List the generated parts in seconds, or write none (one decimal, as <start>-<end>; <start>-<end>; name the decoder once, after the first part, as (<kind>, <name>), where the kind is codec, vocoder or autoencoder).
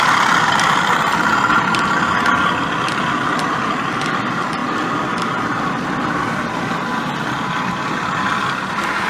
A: 0.0-1.1 (vocoder, BigVGAN v2); 2.9-9.1